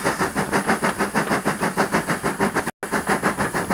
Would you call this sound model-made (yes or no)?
no